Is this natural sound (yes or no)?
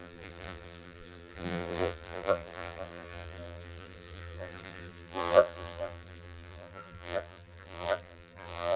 no